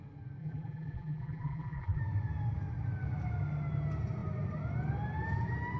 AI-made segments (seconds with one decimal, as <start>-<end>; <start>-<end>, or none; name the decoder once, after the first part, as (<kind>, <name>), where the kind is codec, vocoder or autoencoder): 0.4-2.0 (vocoder, BigVGAN v2)